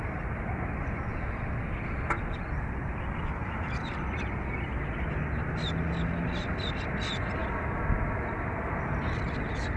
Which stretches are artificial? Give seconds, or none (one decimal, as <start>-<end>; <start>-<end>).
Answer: none